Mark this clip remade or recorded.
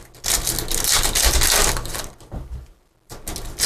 recorded